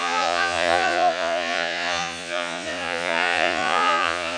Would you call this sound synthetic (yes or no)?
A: yes